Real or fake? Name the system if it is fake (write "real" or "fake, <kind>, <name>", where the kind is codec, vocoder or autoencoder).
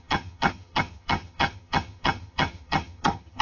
fake, vocoder, HiFi-GAN